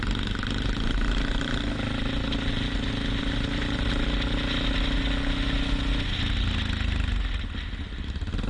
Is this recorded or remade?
recorded